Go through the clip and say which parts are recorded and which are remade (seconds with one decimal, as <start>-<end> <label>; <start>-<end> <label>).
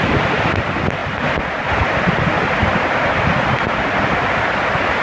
0.0-5.0 recorded